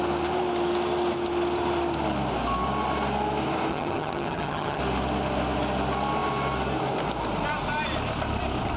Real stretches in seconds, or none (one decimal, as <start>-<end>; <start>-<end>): 0.0-3.7; 4.8-8.8